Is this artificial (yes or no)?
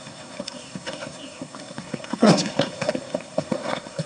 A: yes